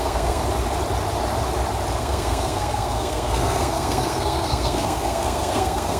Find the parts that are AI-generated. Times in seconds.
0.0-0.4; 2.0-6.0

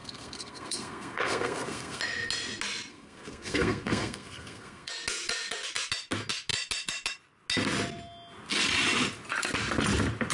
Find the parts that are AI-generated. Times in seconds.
0.0-2.0; 2.9-4.9

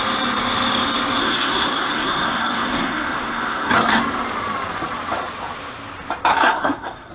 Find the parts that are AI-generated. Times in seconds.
1.2-4.0; 6.3-7.1

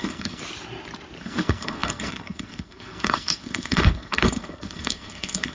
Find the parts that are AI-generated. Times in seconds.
0.0-0.4; 1.2-5.5